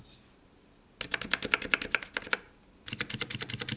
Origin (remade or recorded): recorded